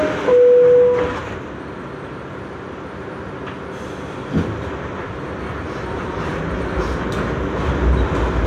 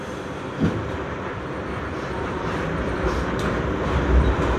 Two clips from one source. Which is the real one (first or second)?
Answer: first